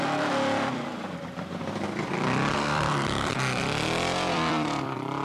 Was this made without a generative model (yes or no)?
no